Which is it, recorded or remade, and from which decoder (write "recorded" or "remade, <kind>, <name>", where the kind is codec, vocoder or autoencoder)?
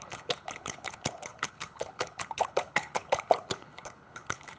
remade, codec, HILCodec